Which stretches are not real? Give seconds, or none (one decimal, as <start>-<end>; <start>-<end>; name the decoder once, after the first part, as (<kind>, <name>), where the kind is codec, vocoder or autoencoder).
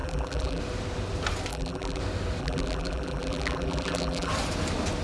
0.0-0.6 (vocoder, BigVGAN v2); 1.5-2.0; 2.4-4.3